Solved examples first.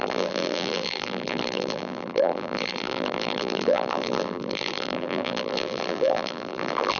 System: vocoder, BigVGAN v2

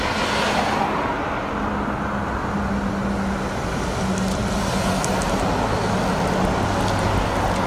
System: none